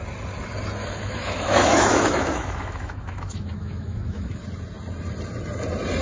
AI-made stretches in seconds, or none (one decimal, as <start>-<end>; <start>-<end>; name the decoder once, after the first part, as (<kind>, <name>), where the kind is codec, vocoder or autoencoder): 0.8-4.4 (autoencoder, DAC-VAE)